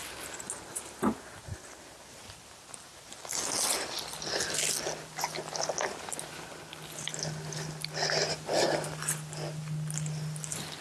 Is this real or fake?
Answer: real